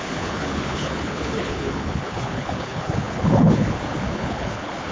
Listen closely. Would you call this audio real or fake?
fake